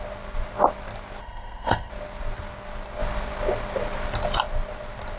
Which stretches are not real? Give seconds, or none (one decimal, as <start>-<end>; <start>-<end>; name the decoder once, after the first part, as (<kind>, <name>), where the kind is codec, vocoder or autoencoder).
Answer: 1.2-1.9 (codec, SNAC)

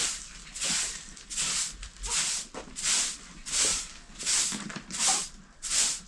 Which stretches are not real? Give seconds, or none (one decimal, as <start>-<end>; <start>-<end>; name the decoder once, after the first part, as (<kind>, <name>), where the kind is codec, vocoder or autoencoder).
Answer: 3.7-4.6 (codec, DAC)

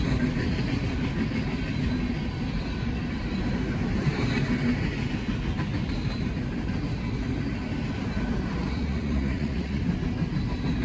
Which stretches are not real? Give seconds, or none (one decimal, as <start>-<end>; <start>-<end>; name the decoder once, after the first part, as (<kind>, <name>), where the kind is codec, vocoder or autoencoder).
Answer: 8.6-9.8 (vocoder, Vocos)

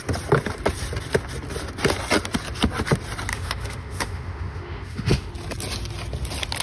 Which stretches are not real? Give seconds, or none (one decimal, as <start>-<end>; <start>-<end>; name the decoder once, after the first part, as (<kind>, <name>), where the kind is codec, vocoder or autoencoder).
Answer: 3.3-5.3 (autoencoder, DAC-VAE)

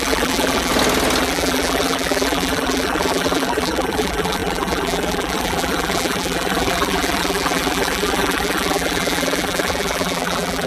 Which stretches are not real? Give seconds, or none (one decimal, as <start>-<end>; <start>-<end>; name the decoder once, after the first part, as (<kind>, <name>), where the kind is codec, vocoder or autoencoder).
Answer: 0.0-0.7 (vocoder, BigVGAN v2); 1.2-10.7

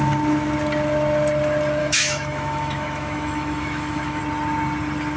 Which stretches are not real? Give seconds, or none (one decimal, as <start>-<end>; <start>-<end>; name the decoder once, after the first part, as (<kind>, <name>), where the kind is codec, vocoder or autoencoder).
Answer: 1.8-4.2 (autoencoder, DAC-VAE)